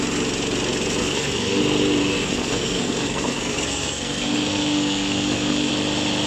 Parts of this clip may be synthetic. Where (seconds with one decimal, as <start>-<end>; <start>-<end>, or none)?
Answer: 1.0-1.6; 2.0-5.7